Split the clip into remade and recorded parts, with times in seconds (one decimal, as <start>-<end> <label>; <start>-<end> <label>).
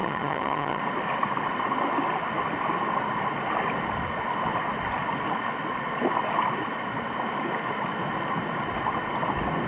0.0-0.8 remade; 0.8-9.7 recorded